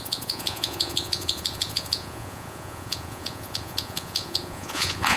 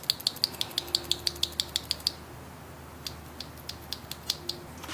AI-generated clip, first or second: first